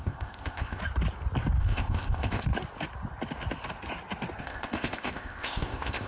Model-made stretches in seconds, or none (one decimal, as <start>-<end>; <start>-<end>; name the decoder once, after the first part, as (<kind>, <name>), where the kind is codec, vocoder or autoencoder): 0.0-0.8 (codec, ZipCodec); 1.6-2.5; 4.4-6.1